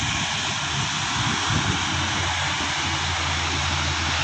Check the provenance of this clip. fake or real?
real